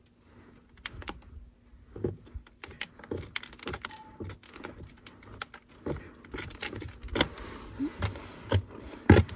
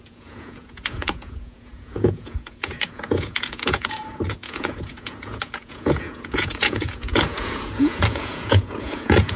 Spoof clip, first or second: second